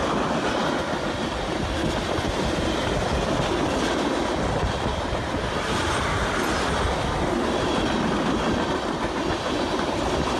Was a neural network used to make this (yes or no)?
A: no